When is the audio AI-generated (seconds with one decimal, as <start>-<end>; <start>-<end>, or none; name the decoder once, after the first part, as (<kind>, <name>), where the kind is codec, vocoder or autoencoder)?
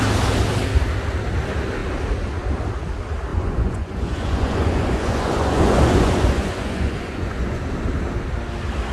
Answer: 3.3-7.6 (vocoder, Vocos)